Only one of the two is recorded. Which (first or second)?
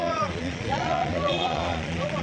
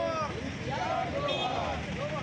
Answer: second